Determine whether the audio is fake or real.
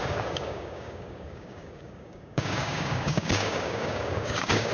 fake